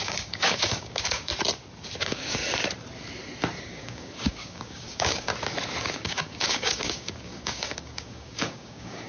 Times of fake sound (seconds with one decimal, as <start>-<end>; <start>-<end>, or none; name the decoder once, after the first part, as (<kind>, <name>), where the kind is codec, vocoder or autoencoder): 0.0-1.3 (codec, DAC); 2.0-2.4; 3.6-5.3; 5.8-9.1

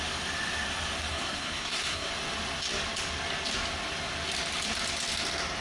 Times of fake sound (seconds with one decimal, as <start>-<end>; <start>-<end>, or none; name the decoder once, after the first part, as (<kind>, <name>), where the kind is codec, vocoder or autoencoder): 1.1-2.1 (codec, SNAC)

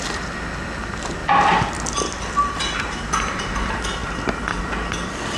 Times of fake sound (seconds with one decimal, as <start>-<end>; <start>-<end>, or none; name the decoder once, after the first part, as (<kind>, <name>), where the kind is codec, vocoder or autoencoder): 1.2-3.4 (vocoder, BigVGAN v2)

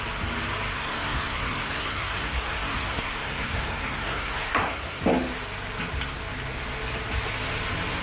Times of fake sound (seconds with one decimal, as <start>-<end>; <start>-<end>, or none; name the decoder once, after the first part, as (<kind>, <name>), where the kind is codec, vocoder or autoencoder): 0.7-5.0 (codec, SNAC)

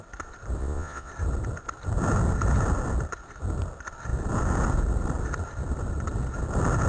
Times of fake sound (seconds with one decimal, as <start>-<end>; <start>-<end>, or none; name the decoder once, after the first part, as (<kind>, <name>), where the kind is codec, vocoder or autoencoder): 0.6-1.1 (vocoder, Vocos)

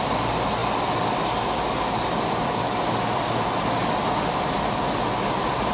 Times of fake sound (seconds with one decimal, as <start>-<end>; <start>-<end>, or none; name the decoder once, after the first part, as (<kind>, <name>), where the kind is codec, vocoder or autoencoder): none

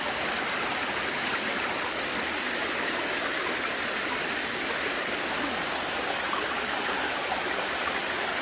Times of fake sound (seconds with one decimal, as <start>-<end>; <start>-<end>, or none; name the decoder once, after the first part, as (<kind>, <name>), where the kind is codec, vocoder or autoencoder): none